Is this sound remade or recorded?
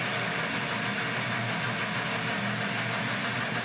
recorded